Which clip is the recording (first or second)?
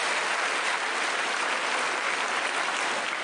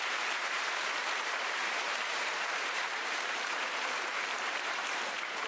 first